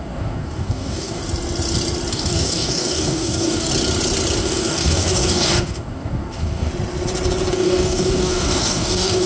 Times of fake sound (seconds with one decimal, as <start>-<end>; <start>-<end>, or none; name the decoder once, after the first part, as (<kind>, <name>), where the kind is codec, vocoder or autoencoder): 0.0-1.2 (codec, DAC); 2.1-3.7; 4.4-6.7; 7.5-9.3